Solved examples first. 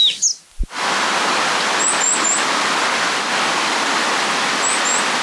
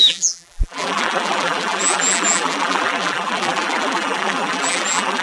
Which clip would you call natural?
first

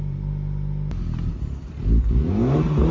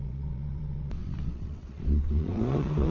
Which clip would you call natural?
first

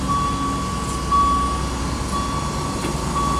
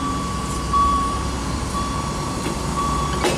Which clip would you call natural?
first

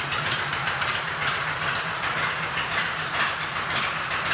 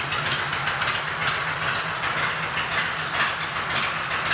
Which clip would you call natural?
second